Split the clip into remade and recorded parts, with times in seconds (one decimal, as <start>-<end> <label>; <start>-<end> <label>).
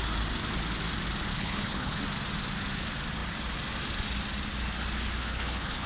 0.0-1.3 recorded; 1.3-2.0 remade; 2.0-5.2 recorded; 5.2-5.9 remade